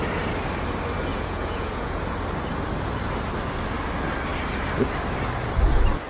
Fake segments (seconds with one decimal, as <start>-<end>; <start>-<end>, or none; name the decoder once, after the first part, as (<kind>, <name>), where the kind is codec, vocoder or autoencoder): 1.1-2.0 (vocoder, Vocos)